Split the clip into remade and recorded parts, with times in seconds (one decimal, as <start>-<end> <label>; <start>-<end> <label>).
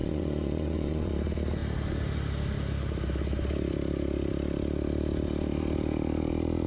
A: 0.0-1.1 remade; 1.1-6.7 recorded